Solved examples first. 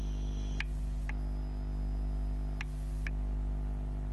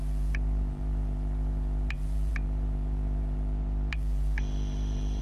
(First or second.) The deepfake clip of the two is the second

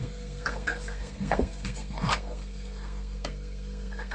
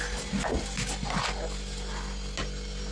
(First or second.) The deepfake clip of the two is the first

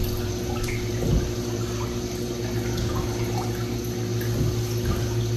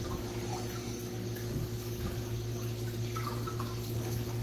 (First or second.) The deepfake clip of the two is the second